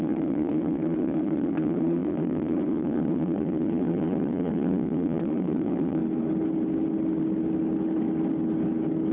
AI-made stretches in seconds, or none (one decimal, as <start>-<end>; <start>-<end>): 0.0-6.0